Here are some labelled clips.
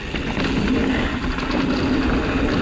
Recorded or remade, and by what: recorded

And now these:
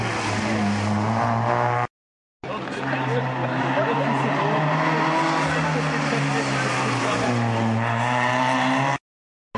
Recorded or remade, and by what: recorded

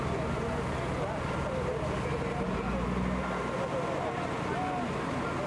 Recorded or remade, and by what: recorded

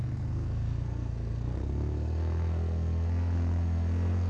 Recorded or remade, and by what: remade, codec, SNAC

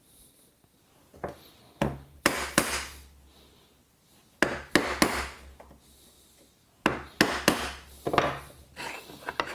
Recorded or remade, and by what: recorded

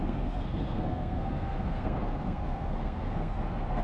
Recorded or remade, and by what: remade, codec, SNAC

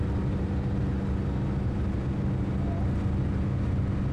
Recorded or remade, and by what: recorded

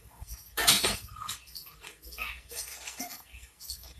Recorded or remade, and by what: remade, codec, SNAC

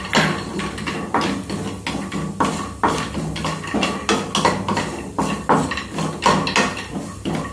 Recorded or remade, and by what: recorded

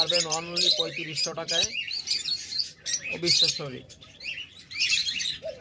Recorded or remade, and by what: remade, vocoder, BigVGAN v2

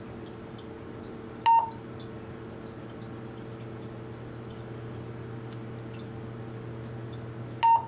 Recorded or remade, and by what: recorded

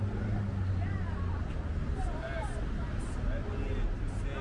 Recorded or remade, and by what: recorded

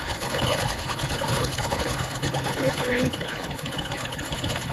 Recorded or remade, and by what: remade, codec, HILCodec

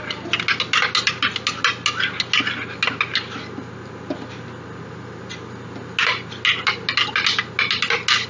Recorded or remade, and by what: recorded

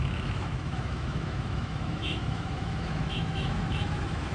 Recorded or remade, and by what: remade, autoencoder, DAC-VAE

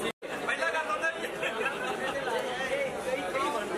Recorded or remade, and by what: recorded